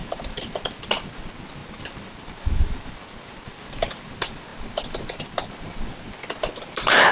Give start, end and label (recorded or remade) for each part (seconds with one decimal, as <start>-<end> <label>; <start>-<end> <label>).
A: 0.0-0.8 remade; 0.8-1.6 recorded; 1.6-4.1 remade; 4.1-7.1 recorded